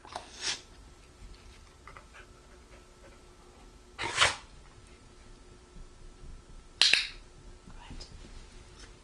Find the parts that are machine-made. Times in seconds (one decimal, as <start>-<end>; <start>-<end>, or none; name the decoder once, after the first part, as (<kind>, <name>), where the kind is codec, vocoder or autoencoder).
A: none